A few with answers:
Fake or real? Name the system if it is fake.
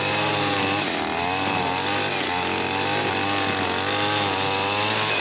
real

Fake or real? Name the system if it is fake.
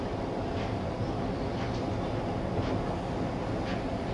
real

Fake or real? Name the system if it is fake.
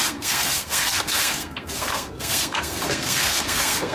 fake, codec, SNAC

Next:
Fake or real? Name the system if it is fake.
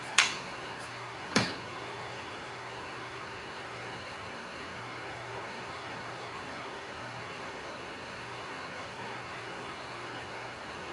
fake, codec, SNAC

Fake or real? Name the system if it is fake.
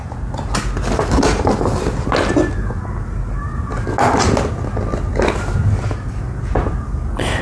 real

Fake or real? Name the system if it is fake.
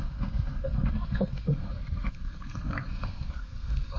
fake, codec, SNAC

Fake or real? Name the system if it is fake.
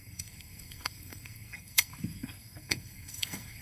fake, codec, SNAC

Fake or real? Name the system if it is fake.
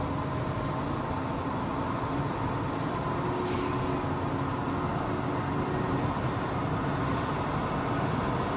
real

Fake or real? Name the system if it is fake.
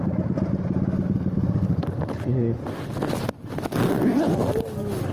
real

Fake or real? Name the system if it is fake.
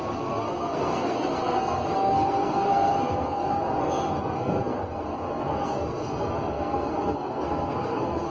fake, codec, SNAC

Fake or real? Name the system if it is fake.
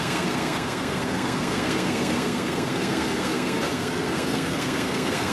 fake, codec, SNAC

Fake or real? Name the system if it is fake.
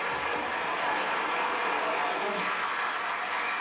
real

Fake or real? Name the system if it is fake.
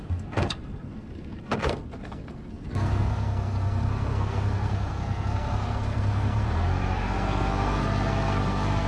fake, codec, SNAC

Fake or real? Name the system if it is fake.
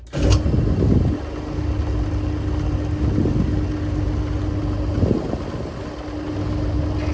real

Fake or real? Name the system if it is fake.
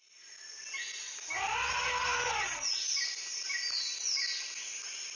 real